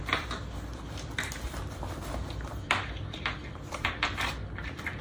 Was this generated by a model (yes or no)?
yes